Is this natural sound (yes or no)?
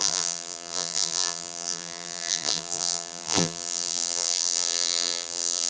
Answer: no